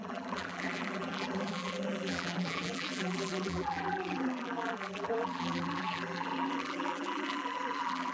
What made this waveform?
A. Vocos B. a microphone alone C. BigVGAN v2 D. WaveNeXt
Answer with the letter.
C